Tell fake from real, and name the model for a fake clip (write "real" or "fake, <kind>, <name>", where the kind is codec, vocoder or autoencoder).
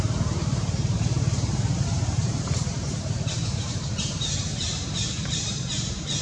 fake, vocoder, BigVGAN v2